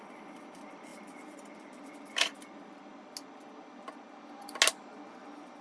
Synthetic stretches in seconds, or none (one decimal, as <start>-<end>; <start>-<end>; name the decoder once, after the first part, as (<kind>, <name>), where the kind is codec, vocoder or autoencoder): 0.9-2.8 (vocoder, BigVGAN v2)